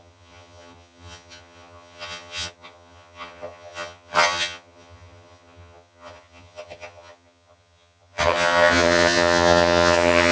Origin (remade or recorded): remade